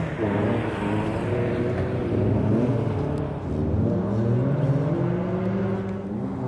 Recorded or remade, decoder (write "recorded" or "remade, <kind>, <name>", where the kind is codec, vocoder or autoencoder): recorded